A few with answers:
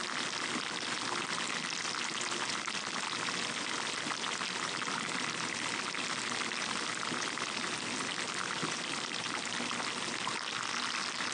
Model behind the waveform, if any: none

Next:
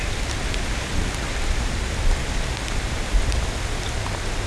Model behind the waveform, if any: none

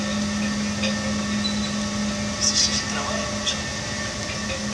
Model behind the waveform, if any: none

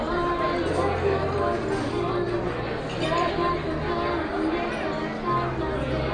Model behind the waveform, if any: none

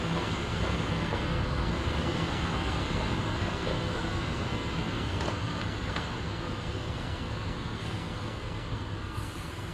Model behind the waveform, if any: codec, SNAC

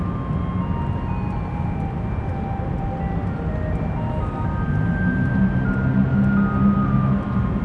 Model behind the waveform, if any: none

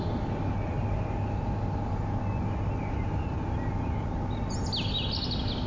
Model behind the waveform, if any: none